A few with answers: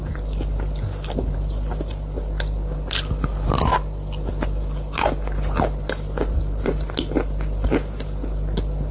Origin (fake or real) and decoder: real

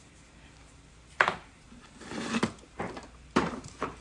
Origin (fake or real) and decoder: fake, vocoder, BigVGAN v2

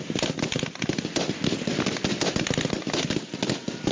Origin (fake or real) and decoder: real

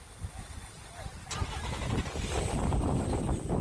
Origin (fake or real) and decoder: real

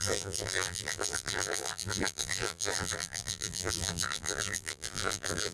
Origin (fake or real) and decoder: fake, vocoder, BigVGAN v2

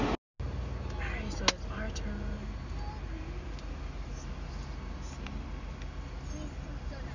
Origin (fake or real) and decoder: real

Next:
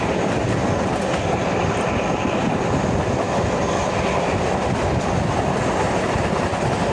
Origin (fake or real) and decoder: real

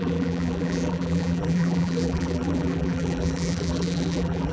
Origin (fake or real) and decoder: fake, vocoder, BigVGAN v2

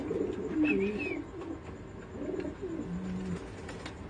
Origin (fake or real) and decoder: real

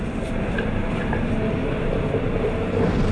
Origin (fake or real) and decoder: fake, vocoder, BigVGAN v2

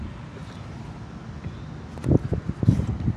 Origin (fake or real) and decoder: real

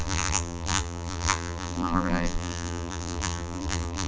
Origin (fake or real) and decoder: fake, vocoder, BigVGAN v2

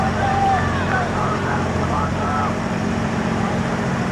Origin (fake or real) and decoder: fake, vocoder, BigVGAN v2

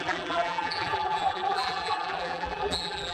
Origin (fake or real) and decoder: fake, vocoder, BigVGAN v2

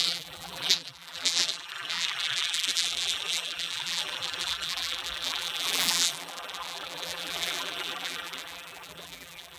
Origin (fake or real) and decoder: fake, vocoder, BigVGAN v2